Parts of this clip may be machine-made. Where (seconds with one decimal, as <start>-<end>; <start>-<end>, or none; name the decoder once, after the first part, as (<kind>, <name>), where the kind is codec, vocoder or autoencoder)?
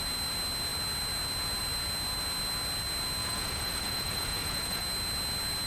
3.2-4.8 (vocoder, Vocos)